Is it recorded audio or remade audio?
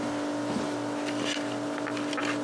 recorded